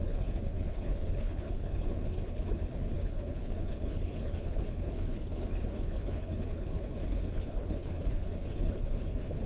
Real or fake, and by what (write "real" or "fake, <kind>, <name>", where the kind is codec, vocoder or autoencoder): fake, codec, HILCodec